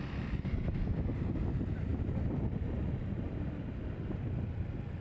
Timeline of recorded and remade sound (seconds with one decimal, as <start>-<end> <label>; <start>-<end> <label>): 0.0-1.9 recorded; 1.9-2.4 remade; 2.4-5.0 recorded